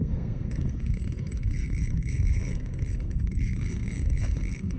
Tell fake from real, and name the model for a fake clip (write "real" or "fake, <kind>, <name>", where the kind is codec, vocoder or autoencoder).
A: fake, codec, SNAC